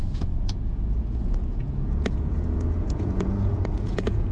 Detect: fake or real fake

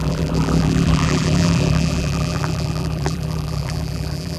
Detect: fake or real fake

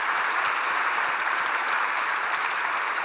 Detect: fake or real fake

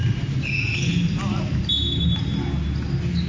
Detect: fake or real real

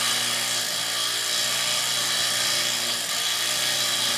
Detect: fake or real real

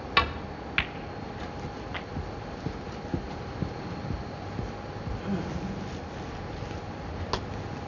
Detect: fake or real real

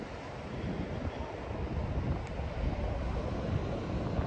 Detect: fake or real real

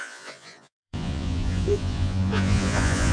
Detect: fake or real fake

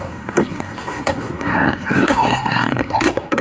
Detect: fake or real fake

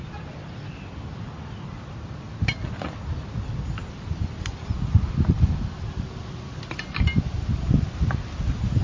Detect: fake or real real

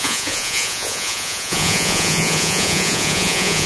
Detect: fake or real fake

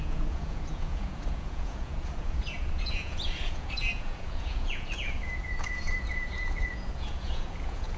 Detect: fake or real fake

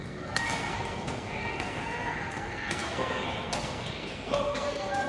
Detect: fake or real fake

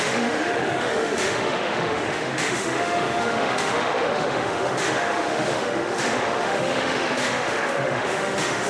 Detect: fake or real fake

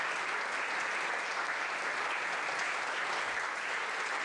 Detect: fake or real real